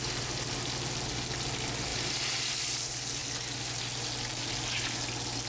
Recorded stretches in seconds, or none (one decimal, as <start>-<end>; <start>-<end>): 0.0-5.5